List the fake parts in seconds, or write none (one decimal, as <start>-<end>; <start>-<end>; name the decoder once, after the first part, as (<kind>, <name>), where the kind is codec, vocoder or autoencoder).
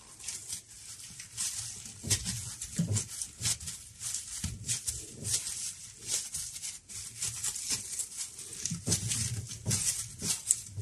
none